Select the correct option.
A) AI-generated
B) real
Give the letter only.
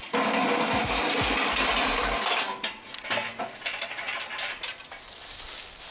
B